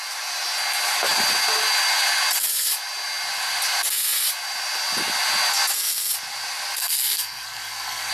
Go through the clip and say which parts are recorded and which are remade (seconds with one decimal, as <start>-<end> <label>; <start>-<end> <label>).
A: 0.0-6.8 recorded; 6.8-8.1 remade